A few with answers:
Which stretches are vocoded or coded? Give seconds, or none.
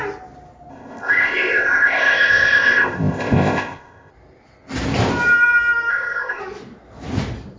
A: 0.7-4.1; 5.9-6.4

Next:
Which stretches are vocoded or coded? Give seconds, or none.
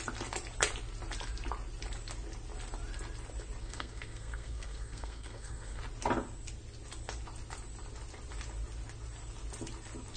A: 3.6-5.8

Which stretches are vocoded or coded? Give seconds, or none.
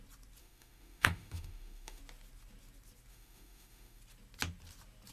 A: 0.4-2.0; 3.1-4.0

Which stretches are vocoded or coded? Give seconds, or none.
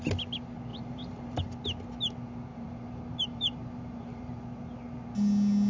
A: 0.7-1.4; 2.5-4.4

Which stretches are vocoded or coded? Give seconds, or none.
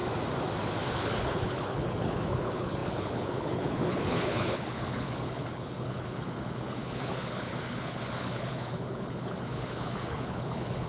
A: 0.9-10.9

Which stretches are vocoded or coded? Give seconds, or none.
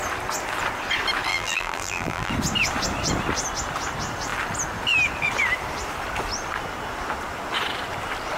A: 1.3-2.3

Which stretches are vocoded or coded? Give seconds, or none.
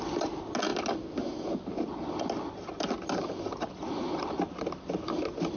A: none